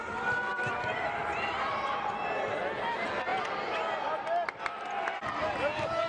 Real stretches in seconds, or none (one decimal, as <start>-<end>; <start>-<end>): 0.0-0.5; 2.6-6.1